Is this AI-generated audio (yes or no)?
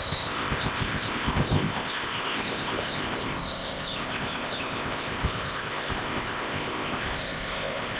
yes